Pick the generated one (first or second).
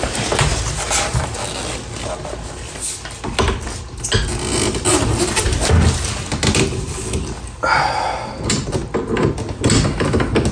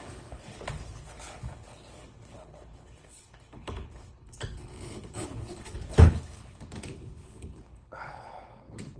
second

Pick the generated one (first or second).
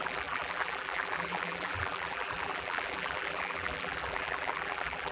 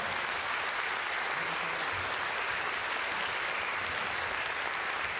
first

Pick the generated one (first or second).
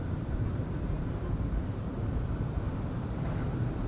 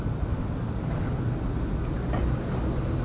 first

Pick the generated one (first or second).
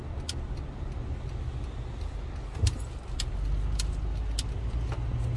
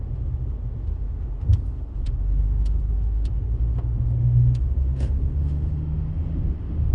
second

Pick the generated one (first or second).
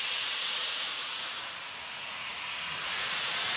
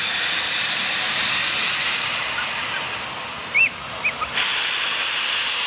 first